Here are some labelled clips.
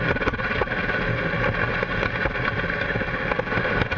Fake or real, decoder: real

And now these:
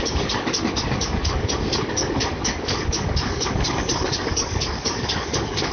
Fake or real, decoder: fake, codec, DAC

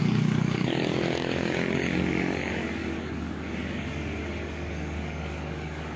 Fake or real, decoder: fake, codec, DAC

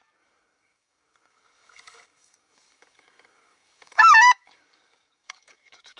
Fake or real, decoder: fake, codec, DAC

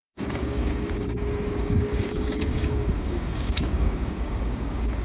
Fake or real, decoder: fake, codec, DAC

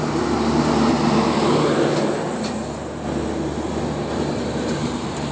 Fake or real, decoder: real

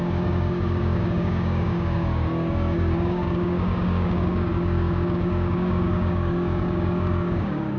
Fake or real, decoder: fake, codec, DAC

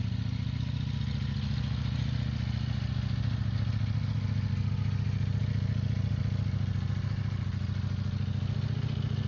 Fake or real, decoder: real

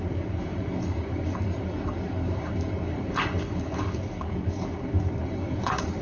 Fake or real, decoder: fake, codec, DAC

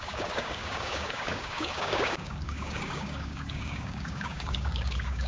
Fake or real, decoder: fake, codec, DAC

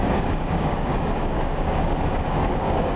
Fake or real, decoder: fake, codec, DAC